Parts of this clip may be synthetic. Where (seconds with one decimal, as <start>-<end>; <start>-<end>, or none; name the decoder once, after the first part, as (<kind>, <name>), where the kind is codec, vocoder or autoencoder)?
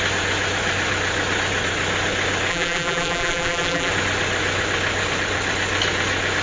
2.5-3.9 (vocoder, BigVGAN v2)